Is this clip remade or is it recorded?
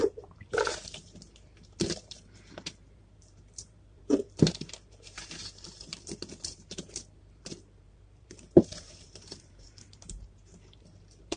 remade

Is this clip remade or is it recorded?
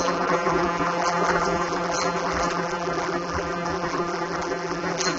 remade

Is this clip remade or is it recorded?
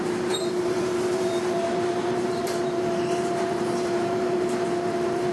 remade